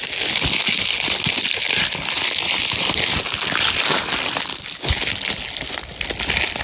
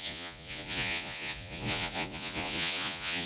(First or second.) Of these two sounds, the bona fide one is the first